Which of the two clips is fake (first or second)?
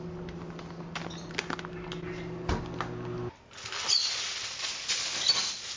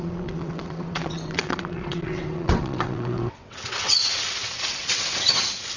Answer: second